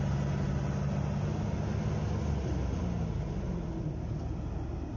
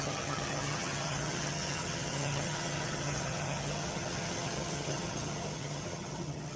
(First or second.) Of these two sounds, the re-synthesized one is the second